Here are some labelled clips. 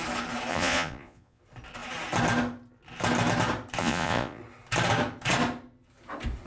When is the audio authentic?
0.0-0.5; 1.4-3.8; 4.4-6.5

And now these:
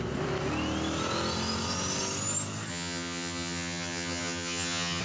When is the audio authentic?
0.0-2.7

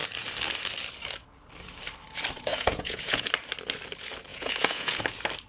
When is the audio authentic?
0.0-2.5; 3.3-4.3; 5.0-5.5

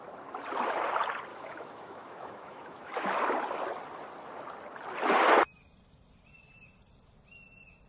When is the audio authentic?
0.0-1.3; 3.0-7.9

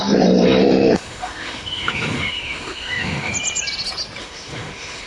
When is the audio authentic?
0.0-0.6; 3.3-4.2